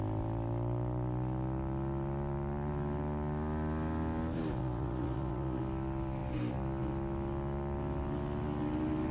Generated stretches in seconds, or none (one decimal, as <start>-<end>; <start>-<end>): 4.6-5.6